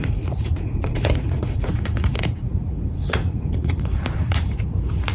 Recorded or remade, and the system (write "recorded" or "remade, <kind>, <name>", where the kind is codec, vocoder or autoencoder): remade, vocoder, Vocos